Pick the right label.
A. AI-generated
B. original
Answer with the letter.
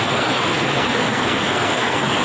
A